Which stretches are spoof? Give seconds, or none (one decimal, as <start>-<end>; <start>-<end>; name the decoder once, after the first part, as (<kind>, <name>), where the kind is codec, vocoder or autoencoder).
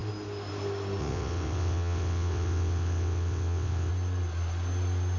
1.0-3.9 (vocoder, WaveNeXt)